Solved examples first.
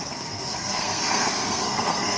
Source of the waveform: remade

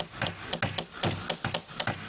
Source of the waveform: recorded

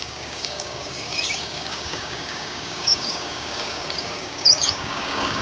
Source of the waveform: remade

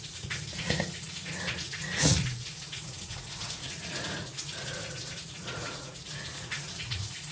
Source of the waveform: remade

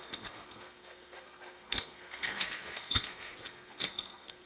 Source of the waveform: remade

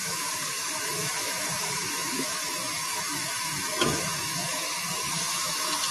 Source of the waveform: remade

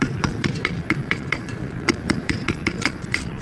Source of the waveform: remade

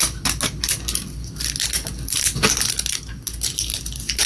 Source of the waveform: recorded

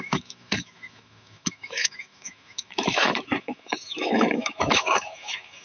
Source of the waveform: remade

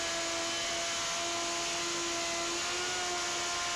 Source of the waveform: recorded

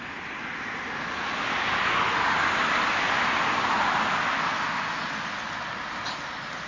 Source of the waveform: recorded